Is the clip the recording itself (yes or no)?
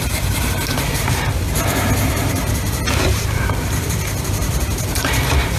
no